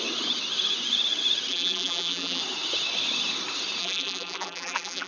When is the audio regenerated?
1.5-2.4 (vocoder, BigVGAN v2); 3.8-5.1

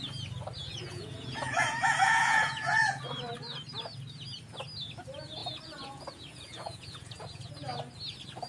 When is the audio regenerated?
0.6-3.0 (vocoder, Vocos); 5.4-7.5